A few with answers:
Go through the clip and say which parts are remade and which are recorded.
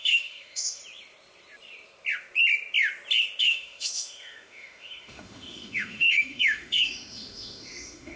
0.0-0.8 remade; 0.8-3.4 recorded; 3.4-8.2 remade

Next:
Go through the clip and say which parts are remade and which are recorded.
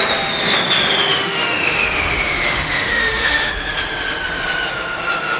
0.0-1.1 recorded; 1.1-3.5 remade; 3.5-5.4 recorded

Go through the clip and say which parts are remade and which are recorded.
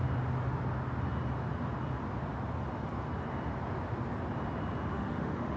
0.0-4.9 recorded; 4.9-5.6 remade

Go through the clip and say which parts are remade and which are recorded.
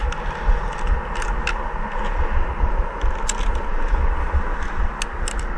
0.0-5.6 recorded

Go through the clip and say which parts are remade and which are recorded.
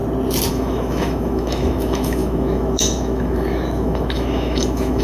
0.0-0.5 recorded; 0.5-5.0 remade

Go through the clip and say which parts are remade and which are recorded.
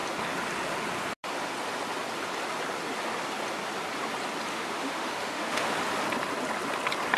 0.0-4.5 recorded; 4.5-5.7 remade; 5.7-7.2 recorded